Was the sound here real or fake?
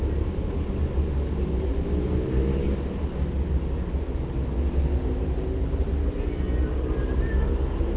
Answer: real